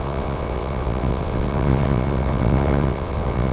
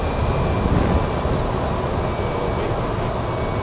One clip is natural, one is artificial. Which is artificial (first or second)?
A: first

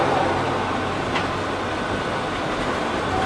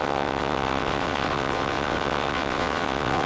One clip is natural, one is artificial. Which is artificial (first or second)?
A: second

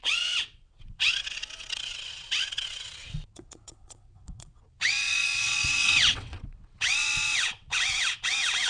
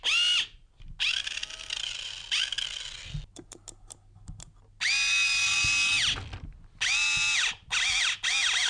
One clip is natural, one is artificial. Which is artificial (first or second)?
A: first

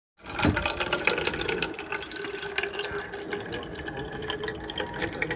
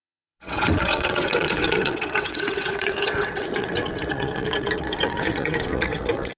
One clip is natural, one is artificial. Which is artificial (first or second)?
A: second